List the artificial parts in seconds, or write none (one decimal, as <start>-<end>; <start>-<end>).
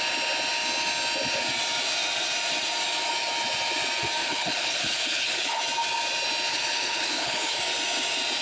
4.2-5.6; 6.5-7.6